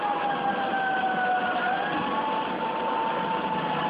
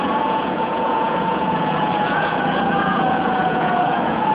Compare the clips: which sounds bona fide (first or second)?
first